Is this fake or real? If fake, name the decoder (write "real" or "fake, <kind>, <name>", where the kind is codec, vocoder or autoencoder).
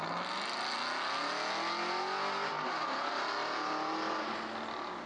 real